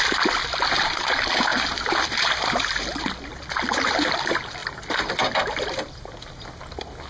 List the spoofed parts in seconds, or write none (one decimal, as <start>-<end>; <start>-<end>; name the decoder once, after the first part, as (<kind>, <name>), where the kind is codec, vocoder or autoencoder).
none